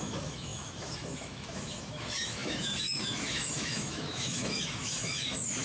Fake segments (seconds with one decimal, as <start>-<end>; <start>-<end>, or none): 0.0-5.6